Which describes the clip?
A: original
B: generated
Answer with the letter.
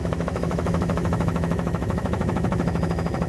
B